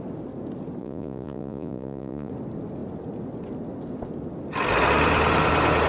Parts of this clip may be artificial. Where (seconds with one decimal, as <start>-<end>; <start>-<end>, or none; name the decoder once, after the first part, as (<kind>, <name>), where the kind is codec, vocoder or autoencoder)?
0.8-2.3 (vocoder, Vocos)